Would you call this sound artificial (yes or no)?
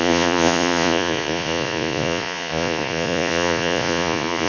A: yes